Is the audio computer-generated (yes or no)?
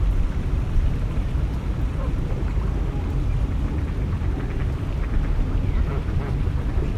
no